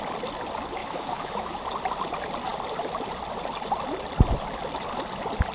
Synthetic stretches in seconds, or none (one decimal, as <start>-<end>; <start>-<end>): 0.8-1.7